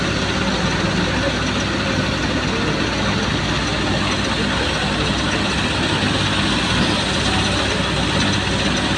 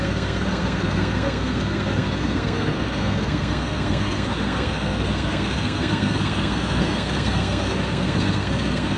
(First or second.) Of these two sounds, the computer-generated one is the second